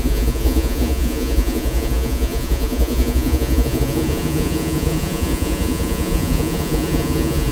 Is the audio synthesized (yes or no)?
yes